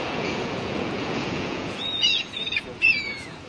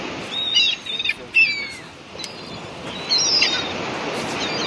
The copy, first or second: first